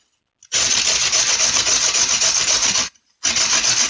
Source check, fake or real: real